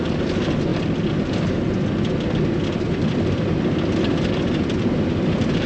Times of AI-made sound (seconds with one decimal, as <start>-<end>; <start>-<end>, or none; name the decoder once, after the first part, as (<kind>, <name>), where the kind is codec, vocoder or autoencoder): none